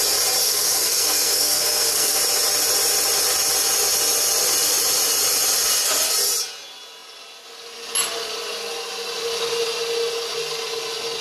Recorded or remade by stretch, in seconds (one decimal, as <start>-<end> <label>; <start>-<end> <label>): 0.0-0.4 recorded; 0.4-2.2 remade; 2.2-11.2 recorded